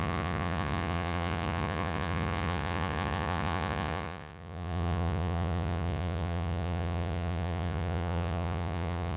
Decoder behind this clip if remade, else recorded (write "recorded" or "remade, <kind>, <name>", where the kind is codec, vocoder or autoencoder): remade, vocoder, Vocos